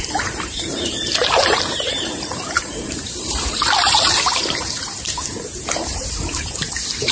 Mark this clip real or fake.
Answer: fake